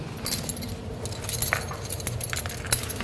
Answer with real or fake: real